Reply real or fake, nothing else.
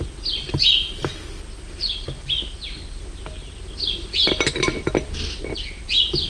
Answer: real